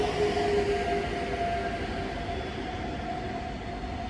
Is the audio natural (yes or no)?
yes